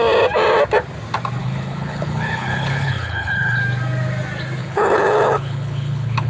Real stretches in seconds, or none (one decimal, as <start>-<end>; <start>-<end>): 0.0-1.4; 3.6-4.6